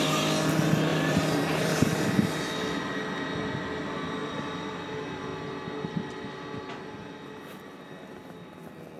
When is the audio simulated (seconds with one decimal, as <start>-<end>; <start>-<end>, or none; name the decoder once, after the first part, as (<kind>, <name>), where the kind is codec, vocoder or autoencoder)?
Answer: 0.9-1.7 (vocoder, BigVGAN v2); 4.2-4.8